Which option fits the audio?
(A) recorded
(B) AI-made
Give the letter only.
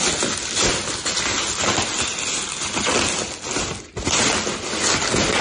A